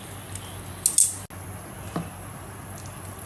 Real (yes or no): yes